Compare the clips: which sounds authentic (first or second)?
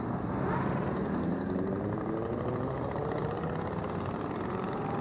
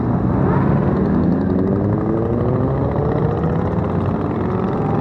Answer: second